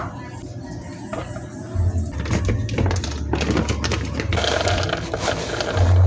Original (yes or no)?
yes